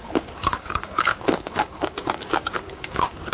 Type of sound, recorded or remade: remade